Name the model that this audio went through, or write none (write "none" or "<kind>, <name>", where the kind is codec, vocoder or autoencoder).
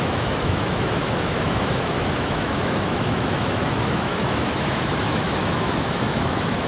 autoencoder, DAC-VAE